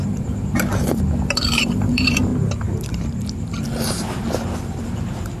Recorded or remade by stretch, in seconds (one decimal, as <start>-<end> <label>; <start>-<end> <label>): 0.0-2.3 remade; 2.3-4.8 recorded; 4.8-5.4 remade